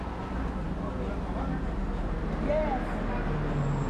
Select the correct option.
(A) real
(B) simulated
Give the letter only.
A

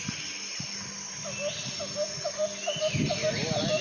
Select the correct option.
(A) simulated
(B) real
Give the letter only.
B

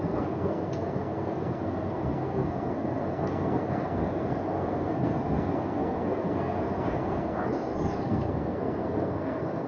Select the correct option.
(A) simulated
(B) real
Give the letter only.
A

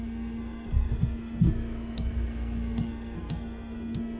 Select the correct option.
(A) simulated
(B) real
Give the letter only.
A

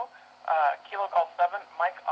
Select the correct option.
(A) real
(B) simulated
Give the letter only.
A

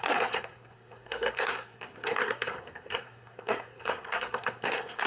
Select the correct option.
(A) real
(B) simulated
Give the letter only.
B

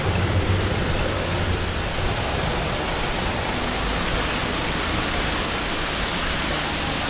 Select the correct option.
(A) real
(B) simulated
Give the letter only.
A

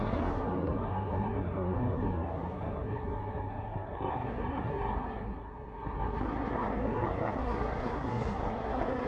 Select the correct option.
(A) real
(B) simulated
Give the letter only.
B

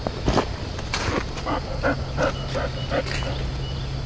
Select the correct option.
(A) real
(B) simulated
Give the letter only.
A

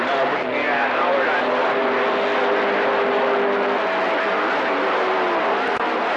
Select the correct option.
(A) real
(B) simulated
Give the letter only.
A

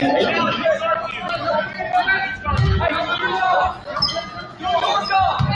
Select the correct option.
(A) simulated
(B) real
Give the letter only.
B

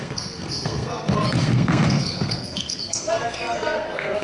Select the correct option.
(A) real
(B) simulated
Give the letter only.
B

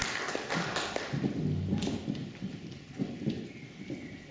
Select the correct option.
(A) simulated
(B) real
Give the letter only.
B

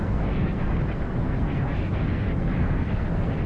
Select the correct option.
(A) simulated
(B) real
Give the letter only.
A